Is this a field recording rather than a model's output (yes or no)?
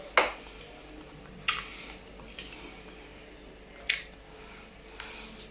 yes